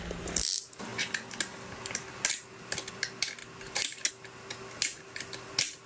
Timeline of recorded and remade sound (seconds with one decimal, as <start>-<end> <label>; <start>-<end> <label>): 0.0-5.9 recorded

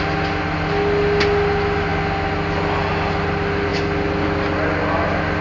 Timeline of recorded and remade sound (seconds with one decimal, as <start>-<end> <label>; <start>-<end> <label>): 0.0-5.4 recorded

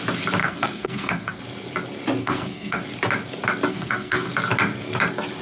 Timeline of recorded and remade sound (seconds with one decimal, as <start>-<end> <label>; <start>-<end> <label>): 0.0-0.4 recorded; 0.4-1.4 remade; 1.4-2.2 recorded; 2.2-2.8 remade; 2.8-3.7 recorded; 3.7-4.3 remade; 4.3-5.4 recorded

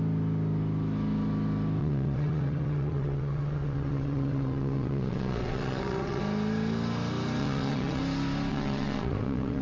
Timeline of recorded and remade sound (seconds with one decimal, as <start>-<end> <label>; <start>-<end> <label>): 0.0-1.8 recorded; 1.8-6.2 remade; 6.2-7.4 recorded; 7.4-8.0 remade; 8.0-8.5 recorded; 8.5-9.6 remade

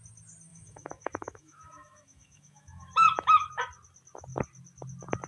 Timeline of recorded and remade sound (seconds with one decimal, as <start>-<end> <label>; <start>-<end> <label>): 0.0-0.5 recorded; 0.5-3.6 remade; 3.6-5.3 recorded